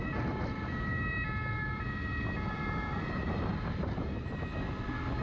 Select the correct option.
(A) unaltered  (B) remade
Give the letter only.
A